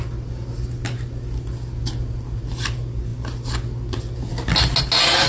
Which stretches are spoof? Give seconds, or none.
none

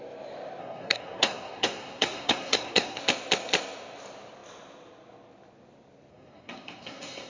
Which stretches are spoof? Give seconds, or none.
0.6-3.0 (codec, SNAC); 6.1-7.3